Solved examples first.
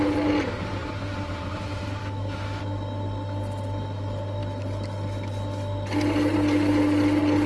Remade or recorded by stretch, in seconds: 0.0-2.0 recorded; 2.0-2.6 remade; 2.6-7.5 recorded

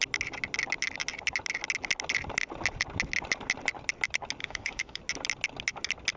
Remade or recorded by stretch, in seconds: 0.0-4.4 recorded; 4.4-5.0 remade; 5.0-6.2 recorded

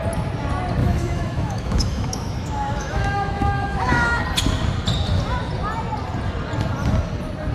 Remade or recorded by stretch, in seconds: 0.0-0.8 recorded; 0.8-4.2 remade; 4.2-7.5 recorded

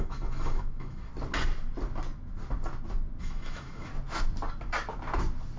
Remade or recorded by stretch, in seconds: 0.0-1.1 remade; 1.1-3.2 recorded; 3.2-3.9 remade; 3.9-5.6 recorded

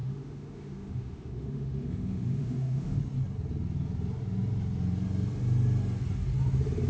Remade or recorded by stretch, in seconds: 0.0-3.0 remade; 3.0-6.9 recorded

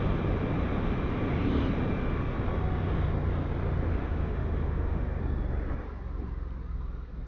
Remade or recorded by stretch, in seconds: 0.0-4.0 recorded; 4.0-5.2 remade; 5.2-7.3 recorded